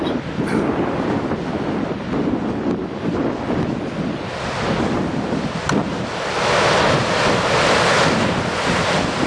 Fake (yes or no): no